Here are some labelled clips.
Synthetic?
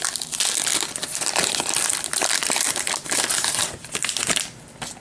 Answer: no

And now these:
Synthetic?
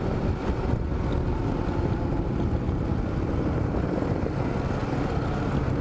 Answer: no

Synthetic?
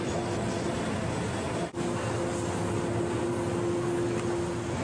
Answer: no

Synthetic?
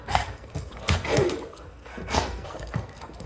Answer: yes